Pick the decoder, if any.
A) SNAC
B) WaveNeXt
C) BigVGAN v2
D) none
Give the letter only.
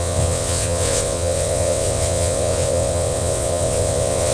B